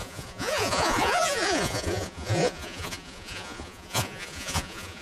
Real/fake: fake